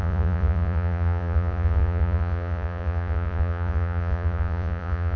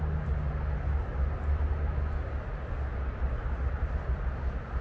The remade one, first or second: first